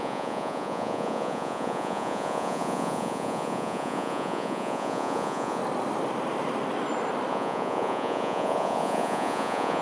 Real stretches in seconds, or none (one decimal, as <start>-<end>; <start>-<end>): 5.6-7.3